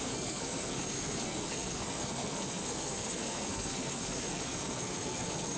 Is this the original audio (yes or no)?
no